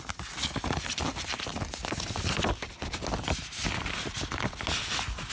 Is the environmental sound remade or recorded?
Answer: recorded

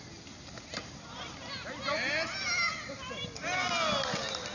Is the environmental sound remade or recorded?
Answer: recorded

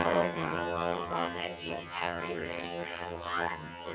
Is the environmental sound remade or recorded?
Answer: remade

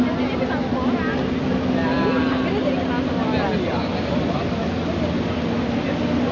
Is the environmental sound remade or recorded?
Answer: recorded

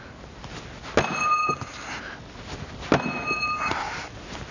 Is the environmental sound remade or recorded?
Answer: recorded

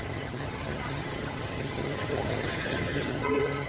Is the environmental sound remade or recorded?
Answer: remade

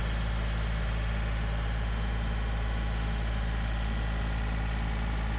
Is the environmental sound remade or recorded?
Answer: recorded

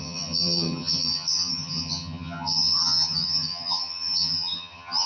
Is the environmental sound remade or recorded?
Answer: remade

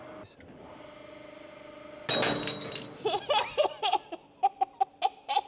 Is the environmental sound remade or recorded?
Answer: recorded